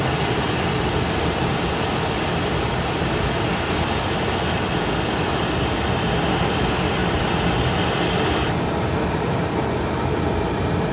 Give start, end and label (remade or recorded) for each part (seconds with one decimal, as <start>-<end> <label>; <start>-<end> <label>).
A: 0.0-10.9 recorded